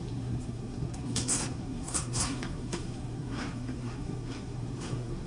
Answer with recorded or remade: remade